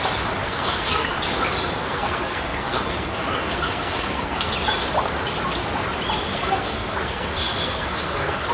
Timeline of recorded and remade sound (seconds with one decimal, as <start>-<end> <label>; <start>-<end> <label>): 0.0-0.4 recorded; 0.4-1.1 remade; 1.1-1.8 recorded; 1.8-4.5 remade; 4.5-6.3 recorded; 6.3-8.5 remade